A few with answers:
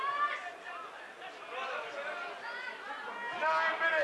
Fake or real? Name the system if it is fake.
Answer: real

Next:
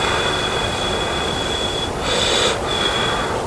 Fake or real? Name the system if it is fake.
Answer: real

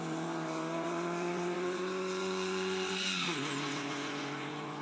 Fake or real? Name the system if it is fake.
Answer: fake, vocoder, Vocos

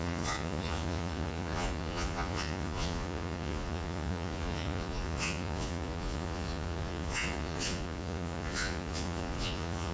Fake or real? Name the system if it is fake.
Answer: fake, vocoder, Vocos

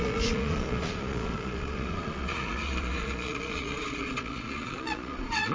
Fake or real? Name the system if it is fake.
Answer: fake, vocoder, Vocos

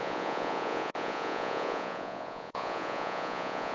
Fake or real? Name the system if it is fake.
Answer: fake, vocoder, Vocos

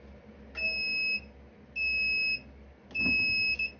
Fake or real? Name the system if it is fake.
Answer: real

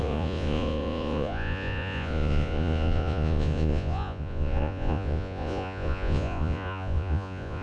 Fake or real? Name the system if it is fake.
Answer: fake, vocoder, Vocos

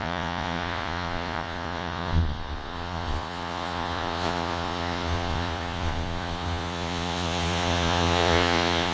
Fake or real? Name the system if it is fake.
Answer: fake, vocoder, Vocos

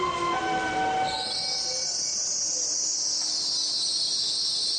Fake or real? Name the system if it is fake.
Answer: real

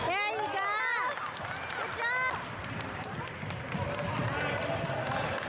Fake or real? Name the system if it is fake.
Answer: real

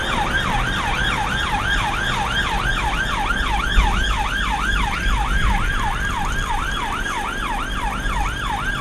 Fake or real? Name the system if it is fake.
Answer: real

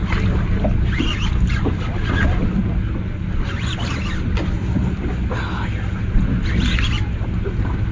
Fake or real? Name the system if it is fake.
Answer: real